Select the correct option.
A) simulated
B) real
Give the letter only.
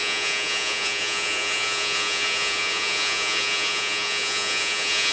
A